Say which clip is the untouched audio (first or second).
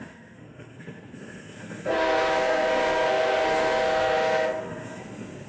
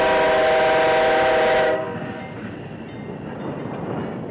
second